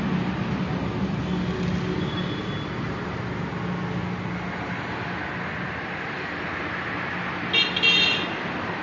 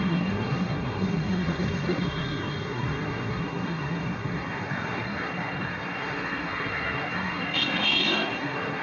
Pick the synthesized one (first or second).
second